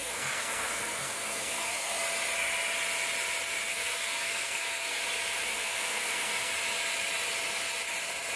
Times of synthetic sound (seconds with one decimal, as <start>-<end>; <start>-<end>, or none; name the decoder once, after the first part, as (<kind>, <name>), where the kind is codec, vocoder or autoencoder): 0.0-1.9 (codec, SNAC); 3.7-5.0; 5.5-6.5